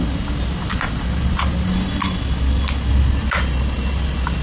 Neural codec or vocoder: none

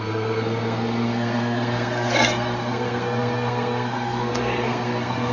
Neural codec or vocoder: codec, SNAC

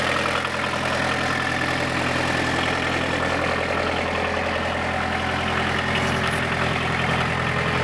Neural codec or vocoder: none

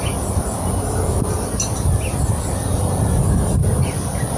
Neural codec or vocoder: none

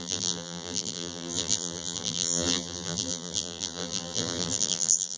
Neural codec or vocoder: vocoder, BigVGAN v2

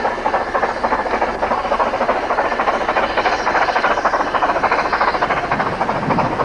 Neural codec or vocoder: none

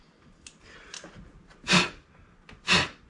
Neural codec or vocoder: none